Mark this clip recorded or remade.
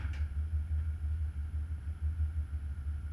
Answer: recorded